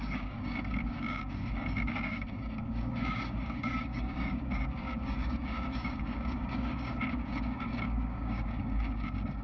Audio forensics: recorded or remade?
remade